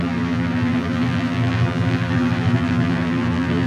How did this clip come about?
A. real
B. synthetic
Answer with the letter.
B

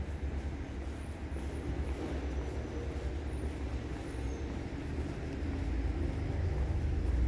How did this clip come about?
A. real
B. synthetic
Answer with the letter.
A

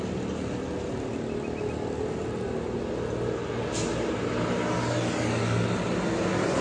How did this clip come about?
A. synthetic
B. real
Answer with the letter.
B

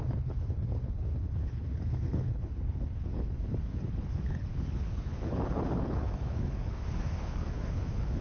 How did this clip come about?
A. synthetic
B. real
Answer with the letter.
A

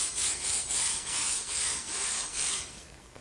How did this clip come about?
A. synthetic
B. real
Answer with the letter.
A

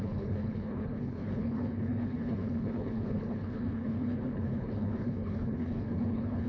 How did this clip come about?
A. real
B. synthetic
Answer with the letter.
B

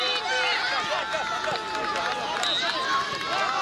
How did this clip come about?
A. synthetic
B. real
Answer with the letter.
B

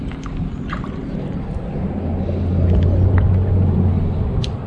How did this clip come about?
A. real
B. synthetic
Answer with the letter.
A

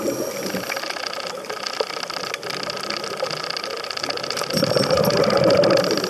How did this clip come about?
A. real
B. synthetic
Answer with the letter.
A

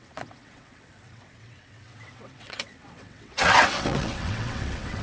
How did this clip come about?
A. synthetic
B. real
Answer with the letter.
A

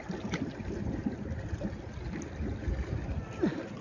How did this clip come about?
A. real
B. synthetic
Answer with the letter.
A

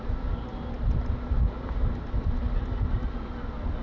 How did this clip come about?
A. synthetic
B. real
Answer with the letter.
B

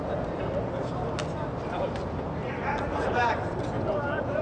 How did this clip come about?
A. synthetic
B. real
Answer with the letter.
B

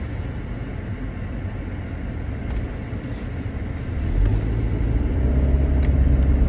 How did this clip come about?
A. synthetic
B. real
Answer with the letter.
B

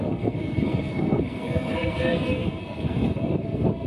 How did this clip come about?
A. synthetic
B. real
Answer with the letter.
A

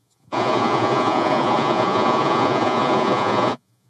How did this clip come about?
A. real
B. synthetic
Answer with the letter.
B